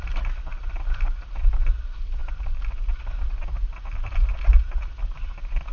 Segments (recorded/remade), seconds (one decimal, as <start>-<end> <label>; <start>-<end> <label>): 0.0-5.7 recorded